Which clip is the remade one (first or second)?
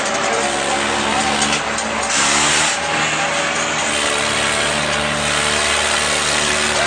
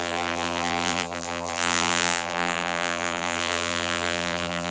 second